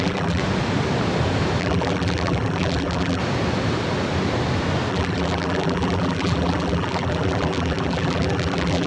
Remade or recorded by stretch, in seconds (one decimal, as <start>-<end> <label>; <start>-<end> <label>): 0.0-0.4 remade; 0.4-1.6 recorded; 1.6-3.2 remade; 3.2-4.9 recorded; 4.9-8.9 remade